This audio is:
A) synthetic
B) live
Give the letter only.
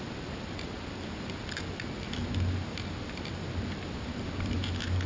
B